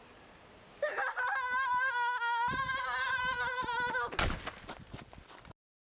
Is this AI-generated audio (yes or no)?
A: no